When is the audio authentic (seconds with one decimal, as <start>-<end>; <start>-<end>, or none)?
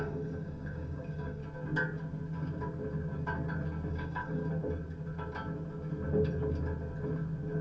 1.4-3.9; 4.4-7.6